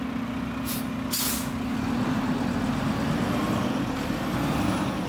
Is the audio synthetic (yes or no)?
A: no